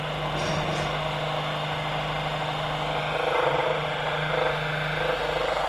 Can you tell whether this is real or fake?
real